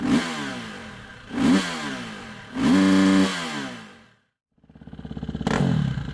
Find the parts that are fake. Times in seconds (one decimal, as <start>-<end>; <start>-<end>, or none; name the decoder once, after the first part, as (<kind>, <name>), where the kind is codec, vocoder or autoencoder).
none